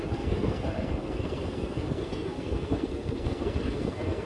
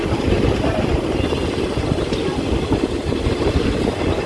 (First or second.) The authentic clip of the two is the second